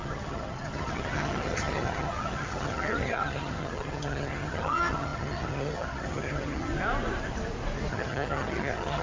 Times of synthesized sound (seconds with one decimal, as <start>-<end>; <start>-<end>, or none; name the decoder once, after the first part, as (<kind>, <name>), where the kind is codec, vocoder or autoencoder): 0.0-6.7 (vocoder, HiFi-GAN); 7.9-9.0